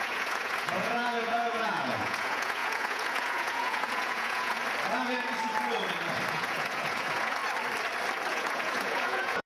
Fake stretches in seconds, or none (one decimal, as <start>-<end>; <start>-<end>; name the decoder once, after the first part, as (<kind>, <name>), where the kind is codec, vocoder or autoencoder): 0.0-4.6 (vocoder, Vocos); 6.3-7.4; 8.3-9.5